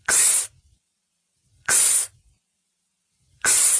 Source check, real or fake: fake